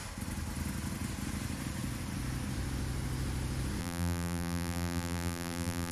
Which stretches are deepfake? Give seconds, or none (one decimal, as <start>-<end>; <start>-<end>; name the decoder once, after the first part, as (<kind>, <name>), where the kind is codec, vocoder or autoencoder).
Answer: 3.8-5.9 (vocoder, BigVGAN v2)